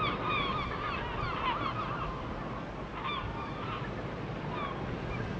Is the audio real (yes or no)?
yes